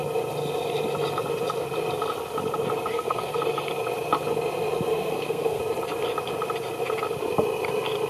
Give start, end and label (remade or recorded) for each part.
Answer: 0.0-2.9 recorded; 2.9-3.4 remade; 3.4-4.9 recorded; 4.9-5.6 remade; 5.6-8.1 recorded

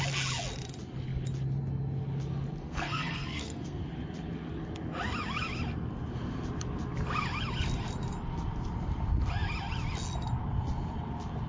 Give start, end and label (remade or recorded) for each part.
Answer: 0.0-2.6 recorded; 2.6-3.8 remade; 3.8-11.5 recorded

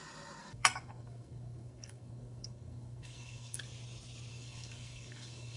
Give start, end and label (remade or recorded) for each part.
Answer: 0.0-0.4 recorded; 0.4-3.6 remade; 3.6-4.3 recorded; 4.3-5.6 remade

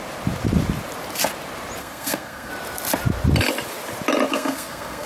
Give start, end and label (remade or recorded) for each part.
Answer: 0.0-1.8 recorded; 1.8-2.5 remade; 2.5-4.3 recorded; 4.3-5.1 remade